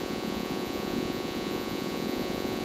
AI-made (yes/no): yes